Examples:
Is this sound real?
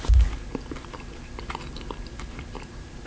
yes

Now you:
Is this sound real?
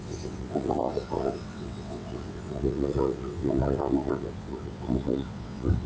no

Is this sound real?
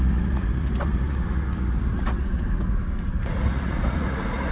no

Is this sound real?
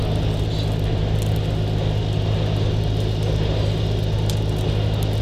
yes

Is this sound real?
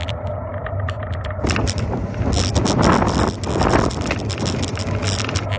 yes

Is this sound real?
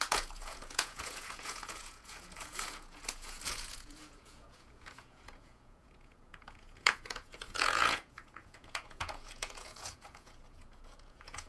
no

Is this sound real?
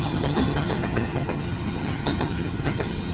no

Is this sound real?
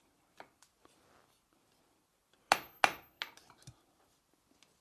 yes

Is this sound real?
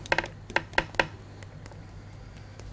yes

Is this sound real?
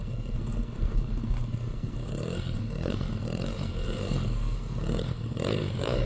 no